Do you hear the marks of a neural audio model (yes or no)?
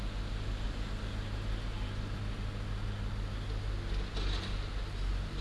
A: no